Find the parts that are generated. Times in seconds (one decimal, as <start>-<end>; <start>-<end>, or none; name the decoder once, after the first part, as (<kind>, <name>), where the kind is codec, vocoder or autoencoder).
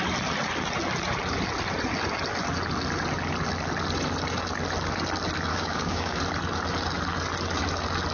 5.5-6.2 (codec, DAC)